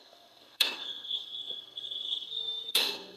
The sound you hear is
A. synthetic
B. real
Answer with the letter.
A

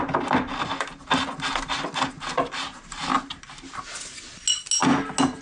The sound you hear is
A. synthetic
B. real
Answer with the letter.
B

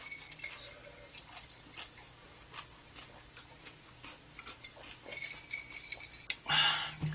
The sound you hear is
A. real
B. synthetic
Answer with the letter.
A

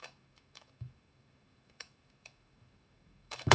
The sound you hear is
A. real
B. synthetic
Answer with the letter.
B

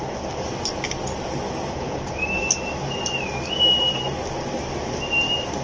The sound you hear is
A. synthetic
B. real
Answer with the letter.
B